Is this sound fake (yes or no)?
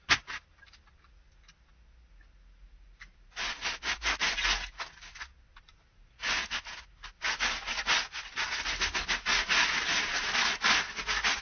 no